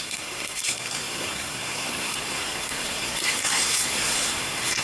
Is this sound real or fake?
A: fake